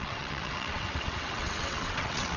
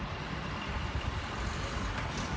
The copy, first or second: first